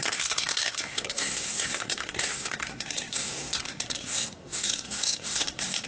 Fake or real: fake